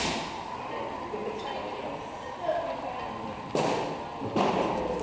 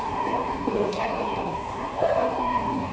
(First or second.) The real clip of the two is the first